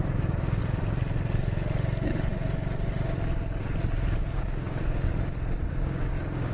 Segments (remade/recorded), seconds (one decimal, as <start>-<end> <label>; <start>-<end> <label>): 0.0-0.6 remade; 0.6-4.3 recorded; 4.3-5.1 remade; 5.1-5.7 recorded; 5.7-6.5 remade